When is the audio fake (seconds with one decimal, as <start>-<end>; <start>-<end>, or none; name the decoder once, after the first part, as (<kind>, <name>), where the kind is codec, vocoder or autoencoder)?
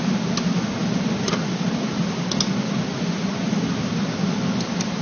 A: none